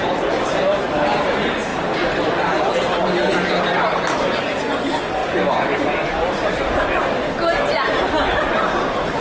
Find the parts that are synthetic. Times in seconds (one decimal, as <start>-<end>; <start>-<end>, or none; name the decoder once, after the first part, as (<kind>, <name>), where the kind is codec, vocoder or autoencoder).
none